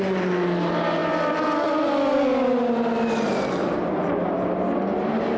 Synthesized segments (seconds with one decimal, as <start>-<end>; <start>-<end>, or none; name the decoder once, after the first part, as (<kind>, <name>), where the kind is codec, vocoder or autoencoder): none